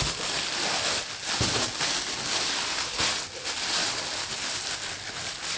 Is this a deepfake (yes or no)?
no